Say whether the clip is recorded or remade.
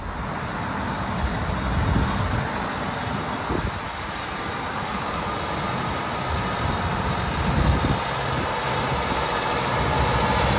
recorded